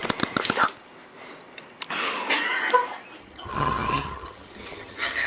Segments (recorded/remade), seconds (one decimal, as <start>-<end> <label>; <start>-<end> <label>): 0.0-3.2 recorded; 3.2-5.3 remade